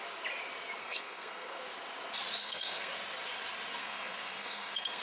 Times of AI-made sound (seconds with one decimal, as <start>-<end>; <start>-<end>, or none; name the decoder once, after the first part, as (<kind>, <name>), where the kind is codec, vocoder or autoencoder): 0.8-1.6 (codec, SNAC); 2.4-2.9; 3.8-5.0